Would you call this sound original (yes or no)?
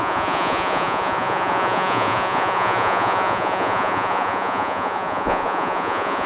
no